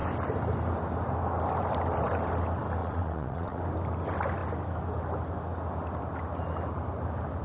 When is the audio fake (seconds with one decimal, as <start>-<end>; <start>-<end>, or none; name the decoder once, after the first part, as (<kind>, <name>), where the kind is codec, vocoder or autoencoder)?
2.8-3.6 (vocoder, WaveNeXt)